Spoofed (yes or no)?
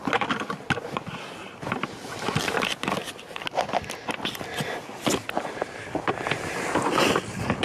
no